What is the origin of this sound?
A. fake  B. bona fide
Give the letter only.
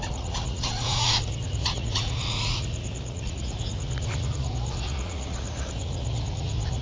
A